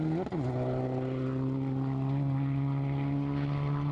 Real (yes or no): yes